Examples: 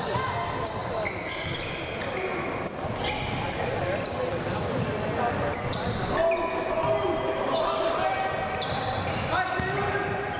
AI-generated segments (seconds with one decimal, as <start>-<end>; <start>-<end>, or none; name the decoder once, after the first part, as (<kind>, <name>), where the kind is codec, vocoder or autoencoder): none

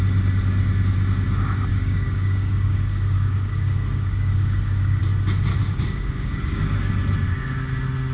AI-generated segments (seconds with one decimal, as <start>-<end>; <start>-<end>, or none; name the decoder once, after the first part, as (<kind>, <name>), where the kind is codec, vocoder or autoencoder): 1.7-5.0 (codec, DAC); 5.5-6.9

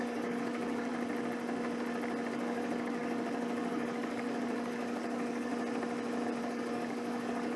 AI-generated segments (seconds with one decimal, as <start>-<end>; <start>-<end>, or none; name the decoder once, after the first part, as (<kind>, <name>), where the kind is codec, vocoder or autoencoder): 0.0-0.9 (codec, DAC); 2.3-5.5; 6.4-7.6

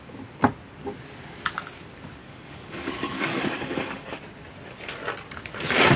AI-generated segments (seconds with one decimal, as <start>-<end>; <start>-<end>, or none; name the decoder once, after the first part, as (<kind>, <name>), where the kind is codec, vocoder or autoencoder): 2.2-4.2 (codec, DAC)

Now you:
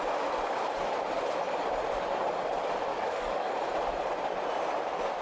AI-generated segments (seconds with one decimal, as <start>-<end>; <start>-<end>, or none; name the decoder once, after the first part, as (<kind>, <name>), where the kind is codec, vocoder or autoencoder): 2.9-3.5 (codec, DAC)

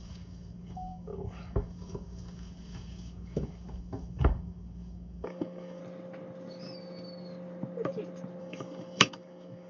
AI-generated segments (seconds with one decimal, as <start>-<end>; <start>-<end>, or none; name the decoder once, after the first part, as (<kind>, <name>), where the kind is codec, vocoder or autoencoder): 0.0-5.8 (codec, DAC); 8.4-9.7